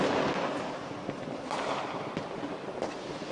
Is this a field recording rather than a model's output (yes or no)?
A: yes